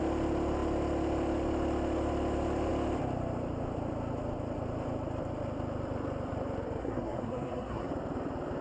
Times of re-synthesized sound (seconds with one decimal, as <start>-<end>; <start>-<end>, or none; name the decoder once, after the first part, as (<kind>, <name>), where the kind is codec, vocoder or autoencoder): 6.8-7.9 (codec, SNAC)